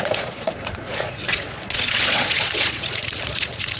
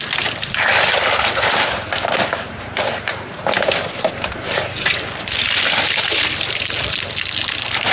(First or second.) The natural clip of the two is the second